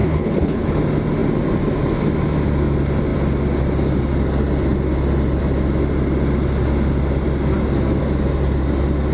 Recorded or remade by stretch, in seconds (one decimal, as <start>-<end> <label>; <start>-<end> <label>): 0.0-0.7 remade; 0.7-9.1 recorded